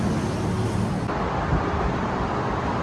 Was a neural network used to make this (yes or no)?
no